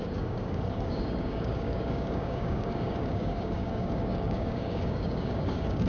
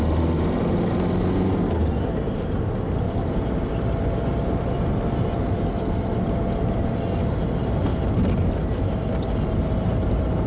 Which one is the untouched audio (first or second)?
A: second